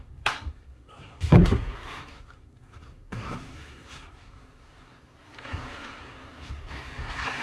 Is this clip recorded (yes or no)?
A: no